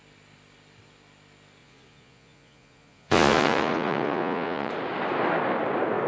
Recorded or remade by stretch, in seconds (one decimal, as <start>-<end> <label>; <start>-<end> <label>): 0.0-1.6 recorded; 1.6-4.7 remade; 4.7-6.1 recorded